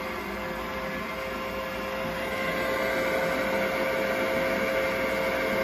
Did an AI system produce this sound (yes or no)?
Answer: no